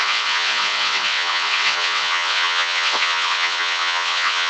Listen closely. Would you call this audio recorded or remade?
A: remade